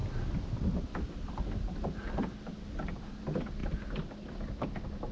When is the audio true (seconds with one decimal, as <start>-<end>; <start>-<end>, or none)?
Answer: 0.0-5.1